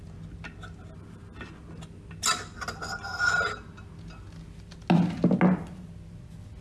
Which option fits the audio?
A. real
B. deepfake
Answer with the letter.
A